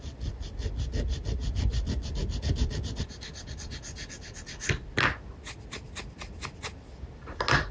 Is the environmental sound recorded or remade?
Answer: recorded